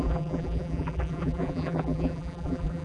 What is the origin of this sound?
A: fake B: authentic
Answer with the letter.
A